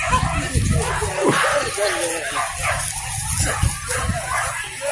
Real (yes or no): yes